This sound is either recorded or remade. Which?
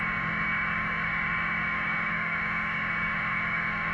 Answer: remade